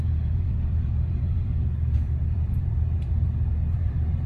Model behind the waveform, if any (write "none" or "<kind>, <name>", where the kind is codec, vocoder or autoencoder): vocoder, BigVGAN v2